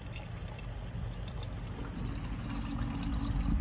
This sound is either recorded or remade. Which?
recorded